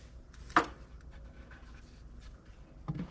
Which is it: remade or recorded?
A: recorded